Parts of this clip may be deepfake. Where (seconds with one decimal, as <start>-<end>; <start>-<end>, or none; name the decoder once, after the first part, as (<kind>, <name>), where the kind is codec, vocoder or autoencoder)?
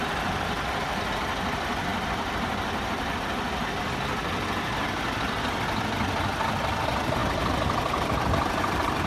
none